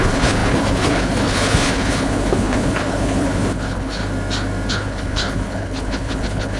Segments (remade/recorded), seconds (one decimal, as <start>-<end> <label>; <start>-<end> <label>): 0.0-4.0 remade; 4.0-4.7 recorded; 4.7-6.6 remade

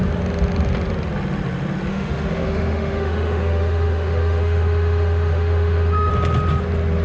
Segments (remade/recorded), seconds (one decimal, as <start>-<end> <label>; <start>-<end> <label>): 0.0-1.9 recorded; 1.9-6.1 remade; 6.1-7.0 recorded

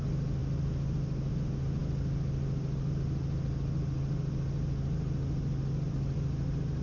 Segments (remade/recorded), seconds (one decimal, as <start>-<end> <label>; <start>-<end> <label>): 0.0-6.8 recorded

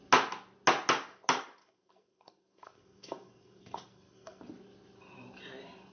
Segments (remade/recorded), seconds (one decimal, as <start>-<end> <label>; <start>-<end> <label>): 0.0-1.6 recorded; 1.6-4.4 remade; 4.4-5.9 recorded